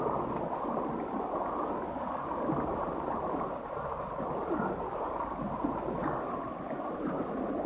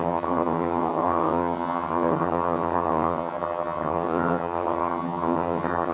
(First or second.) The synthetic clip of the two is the second